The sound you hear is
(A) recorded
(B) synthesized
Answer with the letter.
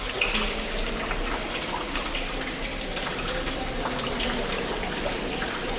A